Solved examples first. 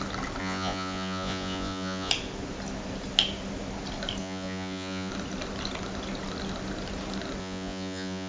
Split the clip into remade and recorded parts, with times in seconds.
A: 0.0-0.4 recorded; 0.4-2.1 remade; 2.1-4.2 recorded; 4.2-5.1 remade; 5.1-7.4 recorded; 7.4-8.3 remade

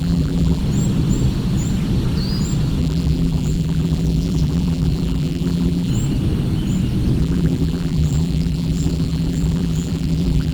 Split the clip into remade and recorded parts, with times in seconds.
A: 0.0-0.6 remade; 0.6-2.8 recorded; 2.8-5.9 remade; 5.9-7.2 recorded; 7.2-10.5 remade

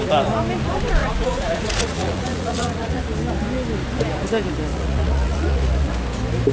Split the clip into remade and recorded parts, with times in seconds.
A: 0.0-1.0 recorded; 1.0-3.0 remade; 3.0-4.7 recorded; 4.7-5.9 remade; 5.9-6.5 recorded

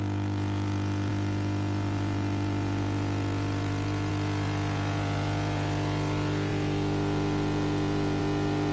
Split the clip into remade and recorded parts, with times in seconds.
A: 0.0-8.7 remade

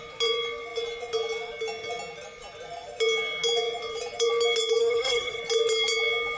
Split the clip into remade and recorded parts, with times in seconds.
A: 0.0-4.8 recorded; 4.8-5.4 remade; 5.4-6.4 recorded

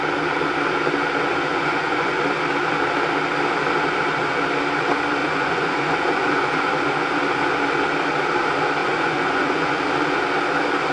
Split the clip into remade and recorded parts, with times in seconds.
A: 0.0-1.5 recorded; 1.5-2.2 remade; 2.2-5.2 recorded; 5.2-6.7 remade; 6.7-8.8 recorded; 8.8-9.8 remade; 9.8-10.9 recorded

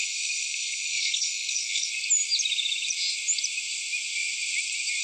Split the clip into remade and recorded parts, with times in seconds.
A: 0.0-1.9 remade; 1.9-5.0 recorded

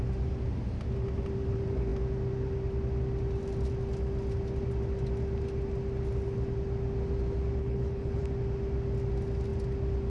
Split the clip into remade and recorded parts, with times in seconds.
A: 0.0-7.6 recorded; 7.6-8.2 remade; 8.2-10.1 recorded